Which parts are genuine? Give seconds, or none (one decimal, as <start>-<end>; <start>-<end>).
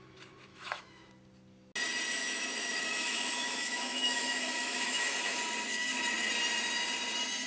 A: 0.0-0.5; 1.1-2.2; 5.4-7.5